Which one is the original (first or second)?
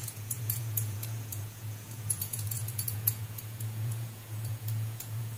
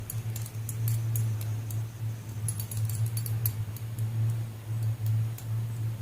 second